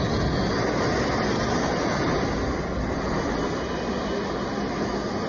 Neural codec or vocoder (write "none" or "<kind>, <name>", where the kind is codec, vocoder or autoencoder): none